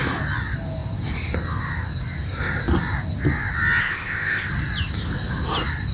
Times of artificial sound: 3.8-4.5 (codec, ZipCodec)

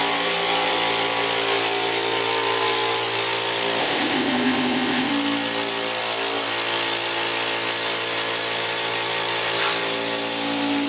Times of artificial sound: 3.8-5.1 (codec, ZipCodec)

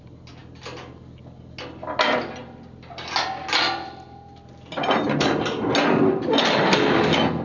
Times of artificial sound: none